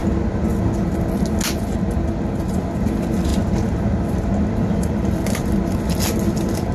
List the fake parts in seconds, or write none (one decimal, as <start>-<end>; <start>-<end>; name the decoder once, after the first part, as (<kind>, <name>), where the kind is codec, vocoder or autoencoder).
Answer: 3.3-5.8 (vocoder, BigVGAN v2)